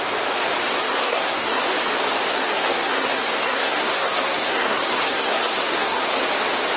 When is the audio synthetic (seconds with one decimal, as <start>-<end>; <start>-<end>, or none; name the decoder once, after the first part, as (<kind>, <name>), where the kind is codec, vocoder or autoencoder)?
0.8-1.6 (codec, SNAC); 2.3-6.2